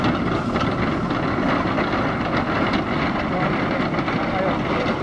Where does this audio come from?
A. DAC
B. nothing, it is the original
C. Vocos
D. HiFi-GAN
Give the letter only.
B